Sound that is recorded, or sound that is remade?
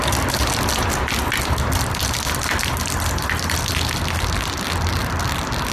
recorded